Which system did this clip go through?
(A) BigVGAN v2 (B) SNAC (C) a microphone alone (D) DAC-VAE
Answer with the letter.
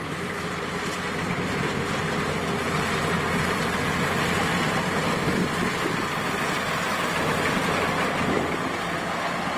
A